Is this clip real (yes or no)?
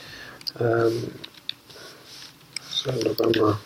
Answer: yes